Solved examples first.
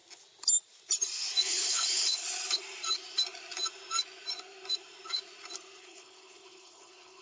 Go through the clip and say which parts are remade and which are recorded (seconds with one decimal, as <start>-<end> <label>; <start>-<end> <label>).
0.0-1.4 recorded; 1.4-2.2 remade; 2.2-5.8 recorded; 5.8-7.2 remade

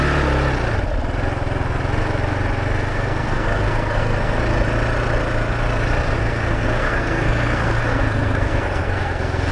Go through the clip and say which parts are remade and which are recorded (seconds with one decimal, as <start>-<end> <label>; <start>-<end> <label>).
0.0-2.9 recorded; 2.9-4.4 remade; 4.4-6.1 recorded; 6.1-9.5 remade

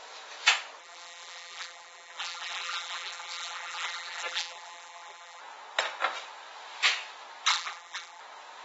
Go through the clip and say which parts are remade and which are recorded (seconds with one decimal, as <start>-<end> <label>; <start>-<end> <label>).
0.0-0.8 recorded; 0.8-5.4 remade; 5.4-7.5 recorded; 7.5-8.2 remade; 8.2-8.6 recorded